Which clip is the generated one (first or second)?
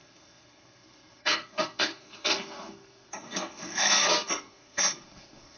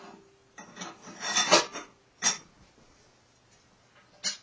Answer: first